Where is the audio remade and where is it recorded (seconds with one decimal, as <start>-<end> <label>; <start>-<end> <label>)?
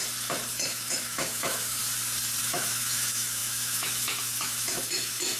0.0-0.5 recorded; 0.5-1.8 remade; 1.8-2.4 recorded; 2.4-5.4 remade